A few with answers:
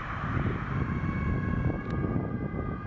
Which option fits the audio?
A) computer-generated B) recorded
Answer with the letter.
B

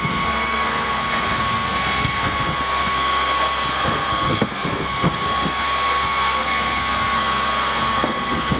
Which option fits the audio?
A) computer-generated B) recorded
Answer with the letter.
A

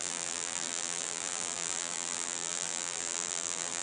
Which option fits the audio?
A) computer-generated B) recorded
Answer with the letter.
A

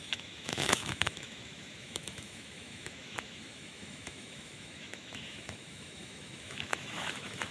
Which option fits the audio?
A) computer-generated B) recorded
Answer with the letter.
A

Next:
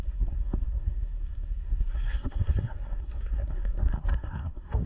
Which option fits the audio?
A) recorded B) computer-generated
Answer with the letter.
B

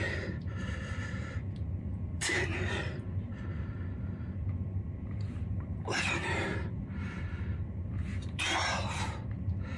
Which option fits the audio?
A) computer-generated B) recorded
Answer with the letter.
A